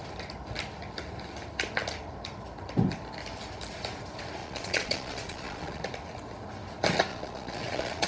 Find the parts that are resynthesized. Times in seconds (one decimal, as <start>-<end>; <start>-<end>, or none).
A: 4.4-5.8; 7.1-8.1